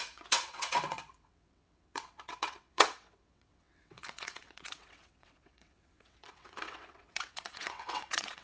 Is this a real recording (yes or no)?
no